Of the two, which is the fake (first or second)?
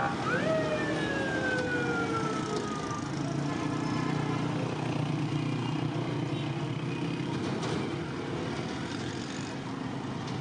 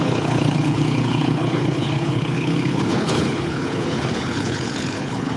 second